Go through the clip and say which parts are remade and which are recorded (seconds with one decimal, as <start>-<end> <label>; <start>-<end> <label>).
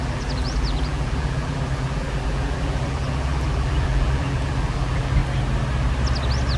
0.0-5.2 remade; 5.2-6.6 recorded